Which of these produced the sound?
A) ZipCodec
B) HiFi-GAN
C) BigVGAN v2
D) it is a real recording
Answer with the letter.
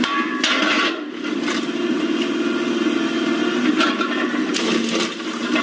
D